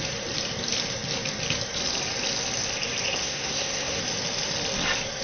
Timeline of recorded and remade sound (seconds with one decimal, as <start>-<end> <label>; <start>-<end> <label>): 0.0-3.2 recorded; 3.2-4.0 remade; 4.0-5.2 recorded